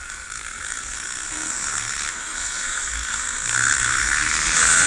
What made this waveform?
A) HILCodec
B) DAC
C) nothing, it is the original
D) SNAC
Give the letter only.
D